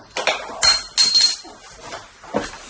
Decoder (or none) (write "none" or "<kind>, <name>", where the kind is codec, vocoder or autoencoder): none